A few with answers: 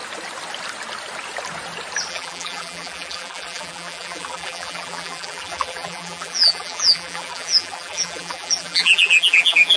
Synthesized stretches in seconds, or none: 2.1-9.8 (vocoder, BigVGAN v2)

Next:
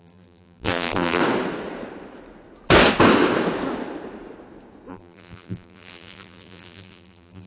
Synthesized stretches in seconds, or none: 0.0-1.2 (vocoder, BigVGAN v2); 4.9-7.5

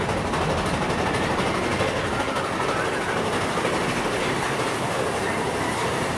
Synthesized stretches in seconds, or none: none

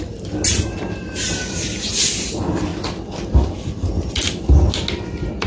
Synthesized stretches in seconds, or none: none

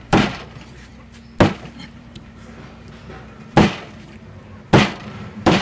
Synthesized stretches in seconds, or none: 0.0-0.9 (vocoder, BigVGAN v2); 1.5-3.0; 5.0-5.6